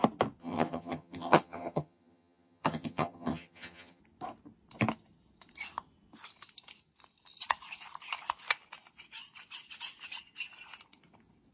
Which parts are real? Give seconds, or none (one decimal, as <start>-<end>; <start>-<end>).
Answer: 0.0-0.4; 4.0-11.5